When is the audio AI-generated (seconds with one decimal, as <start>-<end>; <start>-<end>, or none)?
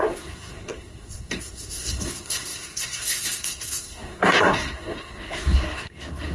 0.0-6.3